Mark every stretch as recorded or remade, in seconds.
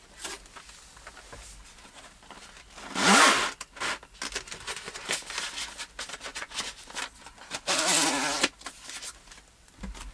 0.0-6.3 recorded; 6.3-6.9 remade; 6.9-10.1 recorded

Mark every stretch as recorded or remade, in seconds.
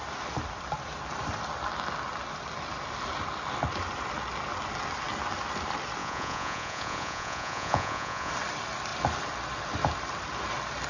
0.0-6.0 recorded; 6.0-8.3 remade; 8.3-10.9 recorded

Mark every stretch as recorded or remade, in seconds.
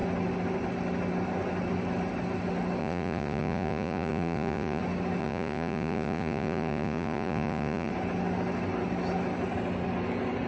0.0-2.8 recorded; 2.8-4.8 remade; 4.8-5.2 recorded; 5.2-7.9 remade; 7.9-10.5 recorded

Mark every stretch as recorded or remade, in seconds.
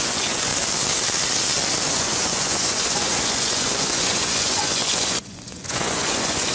0.0-0.5 remade; 0.5-1.9 recorded; 1.9-6.5 remade